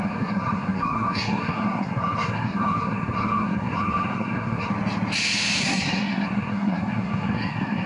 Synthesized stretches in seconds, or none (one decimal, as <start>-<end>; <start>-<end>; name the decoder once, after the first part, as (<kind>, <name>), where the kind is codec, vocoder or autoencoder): 0.0-4.7 (codec, SNAC); 5.6-7.9